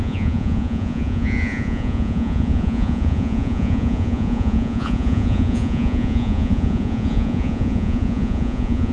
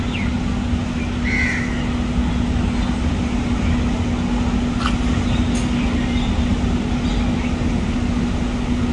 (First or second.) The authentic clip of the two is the second